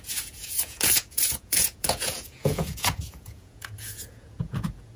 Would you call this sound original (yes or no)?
no